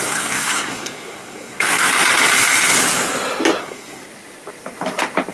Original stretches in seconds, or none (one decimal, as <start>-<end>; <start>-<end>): 1.9-3.6; 4.0-5.3